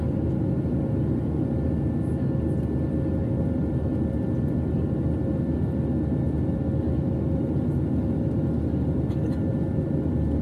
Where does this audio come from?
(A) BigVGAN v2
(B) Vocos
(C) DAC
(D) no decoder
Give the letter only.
D